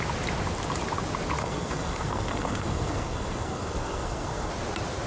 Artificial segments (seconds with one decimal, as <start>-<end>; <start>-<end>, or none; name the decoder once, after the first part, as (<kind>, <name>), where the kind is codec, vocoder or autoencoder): 1.4-4.5 (codec, SNAC)

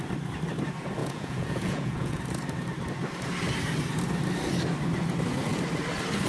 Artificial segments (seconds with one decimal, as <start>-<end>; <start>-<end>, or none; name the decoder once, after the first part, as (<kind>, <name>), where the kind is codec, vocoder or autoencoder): 1.0-2.2 (vocoder, Vocos)

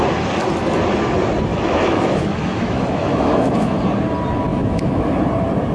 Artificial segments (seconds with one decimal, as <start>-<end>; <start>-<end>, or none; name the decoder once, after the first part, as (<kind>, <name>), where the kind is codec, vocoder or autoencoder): 1.5-3.8 (autoencoder, DAC-VAE); 4.5-5.2

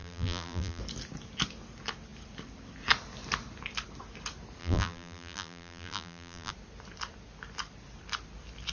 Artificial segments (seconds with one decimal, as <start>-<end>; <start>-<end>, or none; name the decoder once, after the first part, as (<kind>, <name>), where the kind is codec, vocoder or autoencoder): 0.0-0.8 (vocoder, BigVGAN v2); 4.6-6.5

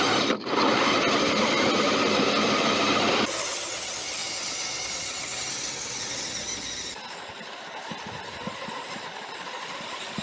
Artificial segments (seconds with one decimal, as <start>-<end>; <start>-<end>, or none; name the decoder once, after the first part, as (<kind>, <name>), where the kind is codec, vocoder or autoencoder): none

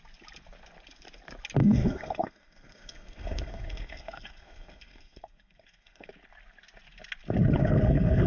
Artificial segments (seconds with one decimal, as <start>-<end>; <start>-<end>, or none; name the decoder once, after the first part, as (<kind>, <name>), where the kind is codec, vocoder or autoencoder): 1.6-6.1 (codec, SNAC); 7.6-8.3

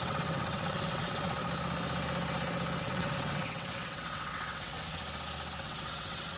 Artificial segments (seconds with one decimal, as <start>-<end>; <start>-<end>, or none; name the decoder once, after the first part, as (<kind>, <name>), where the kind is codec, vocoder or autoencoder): 0.0-1.4 (vocoder, WaveNeXt); 2.8-5.0; 5.6-6.4

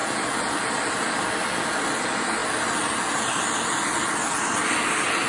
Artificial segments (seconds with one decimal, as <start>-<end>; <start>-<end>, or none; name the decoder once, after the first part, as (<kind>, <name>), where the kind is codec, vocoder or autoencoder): none